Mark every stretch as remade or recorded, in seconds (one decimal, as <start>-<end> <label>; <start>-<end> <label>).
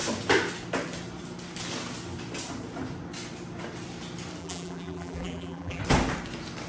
0.0-4.4 recorded; 4.4-5.8 remade; 5.8-6.7 recorded